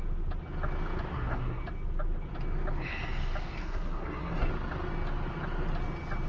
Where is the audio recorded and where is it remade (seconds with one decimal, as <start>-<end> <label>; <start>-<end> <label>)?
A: 0.0-1.1 recorded; 1.1-1.6 remade; 1.6-3.6 recorded; 3.6-4.5 remade; 4.5-6.3 recorded